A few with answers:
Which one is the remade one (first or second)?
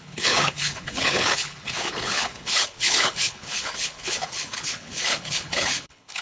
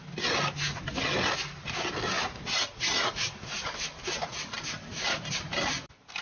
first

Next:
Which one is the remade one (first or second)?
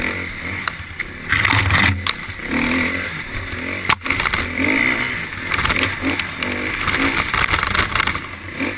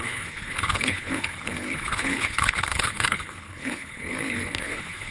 second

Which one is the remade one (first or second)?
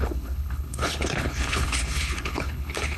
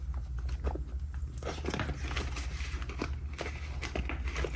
first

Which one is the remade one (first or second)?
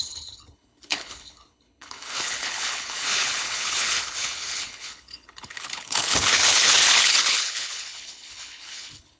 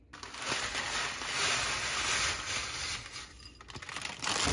first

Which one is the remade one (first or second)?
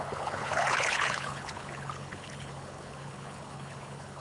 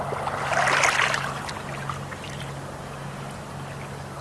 first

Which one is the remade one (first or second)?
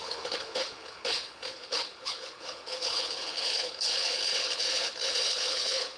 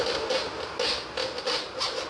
first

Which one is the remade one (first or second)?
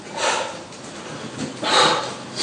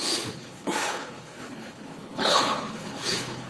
second